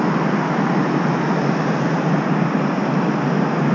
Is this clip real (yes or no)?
yes